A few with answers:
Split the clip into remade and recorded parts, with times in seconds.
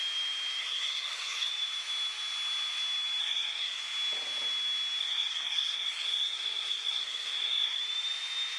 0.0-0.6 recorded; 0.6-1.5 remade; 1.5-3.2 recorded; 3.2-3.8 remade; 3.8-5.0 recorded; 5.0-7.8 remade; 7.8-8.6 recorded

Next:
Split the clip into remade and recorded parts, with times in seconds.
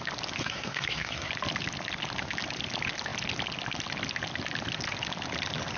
0.0-0.4 recorded; 0.4-1.3 remade; 1.3-5.8 recorded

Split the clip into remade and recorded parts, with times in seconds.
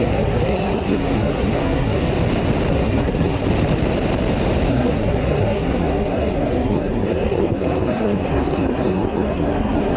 0.0-2.1 remade; 2.1-2.7 recorded; 2.7-3.4 remade; 3.4-4.7 recorded; 4.7-10.0 remade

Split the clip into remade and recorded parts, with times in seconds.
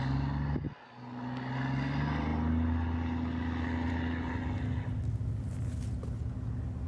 0.0-6.9 recorded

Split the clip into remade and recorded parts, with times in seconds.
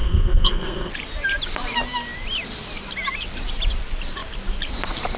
0.0-0.9 remade; 0.9-5.2 recorded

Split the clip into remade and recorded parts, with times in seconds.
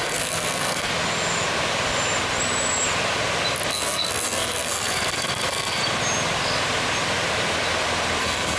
0.0-0.9 remade; 0.9-3.7 recorded; 3.7-5.8 remade; 5.8-8.2 recorded; 8.2-8.6 remade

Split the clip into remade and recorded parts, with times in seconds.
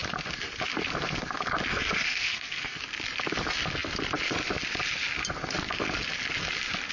0.0-1.7 recorded; 1.7-2.8 remade; 2.8-6.9 recorded